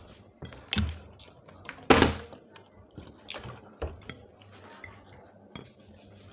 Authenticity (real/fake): real